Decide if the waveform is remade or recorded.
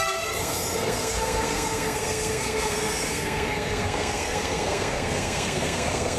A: remade